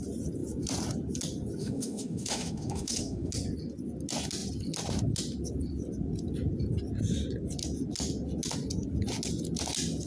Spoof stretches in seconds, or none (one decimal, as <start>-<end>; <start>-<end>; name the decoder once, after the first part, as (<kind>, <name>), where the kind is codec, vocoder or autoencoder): 1.6-3.3 (autoencoder, DAC-VAE)